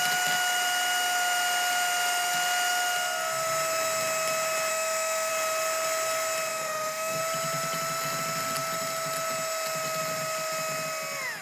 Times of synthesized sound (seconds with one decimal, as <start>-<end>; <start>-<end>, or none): 4.7-5.3; 6.5-7.2